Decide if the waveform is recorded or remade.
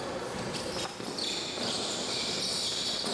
recorded